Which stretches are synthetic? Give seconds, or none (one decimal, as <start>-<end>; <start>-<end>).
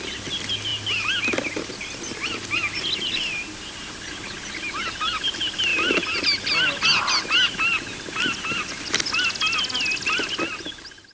none